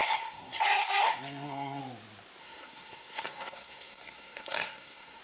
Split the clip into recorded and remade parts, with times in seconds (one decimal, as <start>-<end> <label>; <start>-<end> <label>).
0.0-1.8 remade; 1.8-2.4 recorded; 2.4-5.2 remade